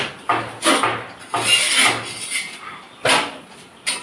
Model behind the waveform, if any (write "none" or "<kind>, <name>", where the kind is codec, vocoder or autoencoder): none